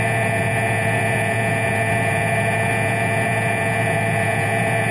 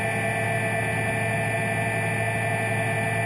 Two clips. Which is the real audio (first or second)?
second